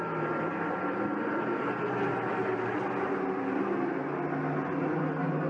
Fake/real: real